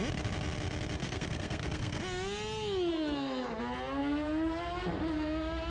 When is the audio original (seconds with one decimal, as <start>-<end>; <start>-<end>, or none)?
0.0-1.0; 2.0-2.9; 3.6-5.7